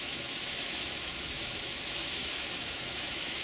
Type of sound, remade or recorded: remade